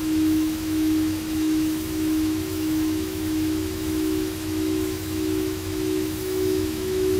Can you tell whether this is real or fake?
fake